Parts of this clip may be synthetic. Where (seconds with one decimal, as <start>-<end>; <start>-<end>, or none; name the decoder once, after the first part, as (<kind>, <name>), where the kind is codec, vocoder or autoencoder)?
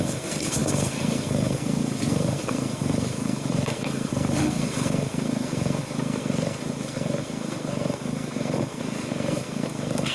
0.0-10.1 (codec, SNAC)